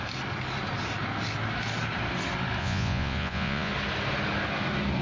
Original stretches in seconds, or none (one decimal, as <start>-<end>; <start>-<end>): 0.0-2.6; 3.7-5.0